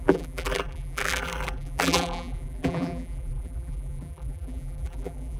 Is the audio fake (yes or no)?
yes